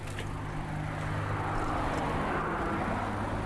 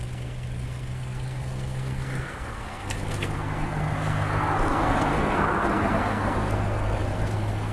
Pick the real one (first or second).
first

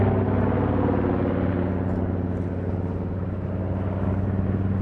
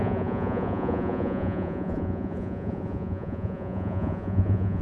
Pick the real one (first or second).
first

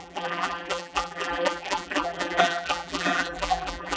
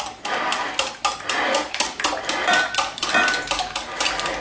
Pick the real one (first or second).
second